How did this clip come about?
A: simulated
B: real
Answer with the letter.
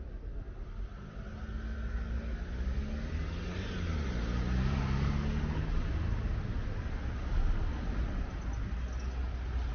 B